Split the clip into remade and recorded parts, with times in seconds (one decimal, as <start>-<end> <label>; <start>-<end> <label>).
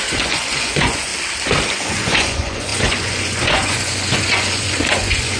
0.0-1.1 remade; 1.1-1.7 recorded; 1.7-5.4 remade